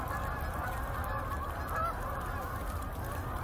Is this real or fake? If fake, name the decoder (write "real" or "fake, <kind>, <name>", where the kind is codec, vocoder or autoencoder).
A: fake, vocoder, BigVGAN v2